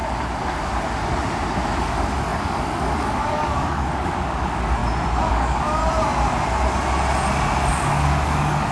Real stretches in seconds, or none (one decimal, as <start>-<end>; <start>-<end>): 0.0-1.8; 4.8-5.3; 5.8-7.7